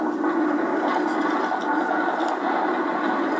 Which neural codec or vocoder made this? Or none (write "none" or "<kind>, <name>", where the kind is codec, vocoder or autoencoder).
none